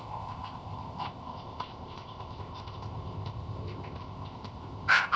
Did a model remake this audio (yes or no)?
yes